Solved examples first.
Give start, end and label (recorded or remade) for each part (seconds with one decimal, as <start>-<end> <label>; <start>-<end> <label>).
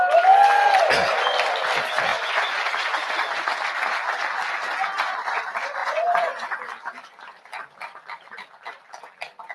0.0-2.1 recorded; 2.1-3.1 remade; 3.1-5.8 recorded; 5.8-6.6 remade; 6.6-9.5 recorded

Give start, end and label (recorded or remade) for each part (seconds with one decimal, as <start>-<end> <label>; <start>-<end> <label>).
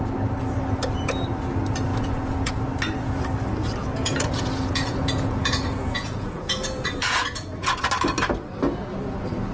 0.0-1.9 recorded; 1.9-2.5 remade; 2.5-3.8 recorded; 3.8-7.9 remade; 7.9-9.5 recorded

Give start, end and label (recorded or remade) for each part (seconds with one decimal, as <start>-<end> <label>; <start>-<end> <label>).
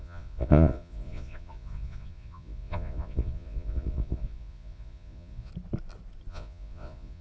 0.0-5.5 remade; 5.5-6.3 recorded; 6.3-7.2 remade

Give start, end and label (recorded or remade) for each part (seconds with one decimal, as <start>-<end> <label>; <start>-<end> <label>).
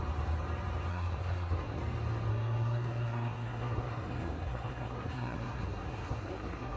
0.0-0.9 recorded; 0.9-1.8 remade; 1.8-2.3 recorded; 2.3-6.8 remade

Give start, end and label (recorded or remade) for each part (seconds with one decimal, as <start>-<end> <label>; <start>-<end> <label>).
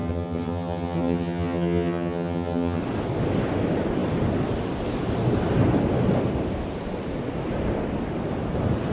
0.0-2.8 remade; 2.8-8.9 recorded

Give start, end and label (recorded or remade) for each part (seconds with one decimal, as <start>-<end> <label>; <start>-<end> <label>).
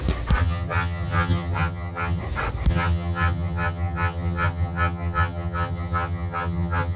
0.0-0.4 recorded; 0.4-2.2 remade; 2.2-2.7 recorded; 2.7-7.0 remade